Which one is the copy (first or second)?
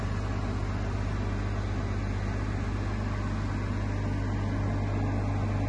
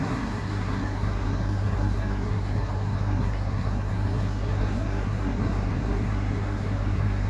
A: second